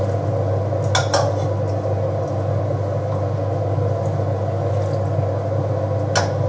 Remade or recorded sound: recorded